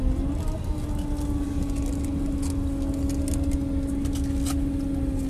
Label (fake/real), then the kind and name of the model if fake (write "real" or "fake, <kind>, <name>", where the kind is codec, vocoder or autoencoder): real